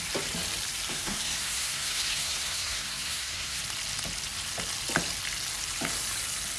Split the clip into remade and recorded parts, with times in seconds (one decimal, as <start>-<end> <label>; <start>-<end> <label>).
0.0-0.9 recorded; 0.9-3.6 remade; 3.6-6.6 recorded